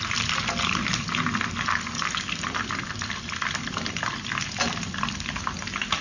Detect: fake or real real